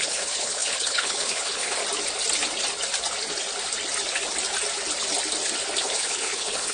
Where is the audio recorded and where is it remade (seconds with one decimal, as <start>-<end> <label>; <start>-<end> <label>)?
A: 0.0-1.8 remade; 1.8-5.8 recorded; 5.8-6.7 remade